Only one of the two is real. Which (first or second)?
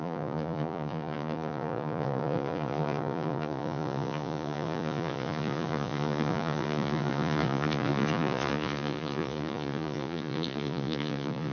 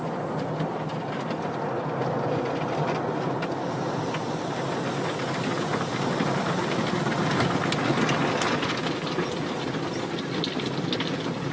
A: second